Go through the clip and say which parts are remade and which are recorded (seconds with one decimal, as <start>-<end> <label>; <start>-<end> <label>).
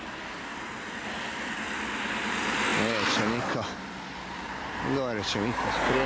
0.0-6.1 recorded